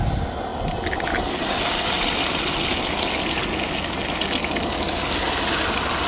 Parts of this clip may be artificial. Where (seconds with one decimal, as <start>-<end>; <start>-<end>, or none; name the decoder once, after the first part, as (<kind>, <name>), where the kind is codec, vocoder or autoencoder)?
none